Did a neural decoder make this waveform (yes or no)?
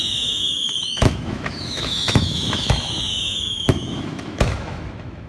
yes